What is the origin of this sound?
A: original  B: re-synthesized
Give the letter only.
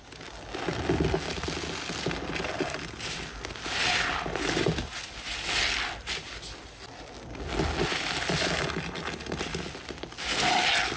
A